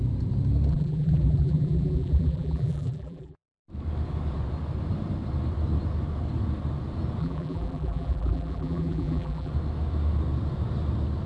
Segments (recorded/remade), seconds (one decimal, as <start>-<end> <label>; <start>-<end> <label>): 0.0-0.7 recorded; 0.7-3.6 remade; 3.6-7.2 recorded; 7.2-9.5 remade; 9.5-11.3 recorded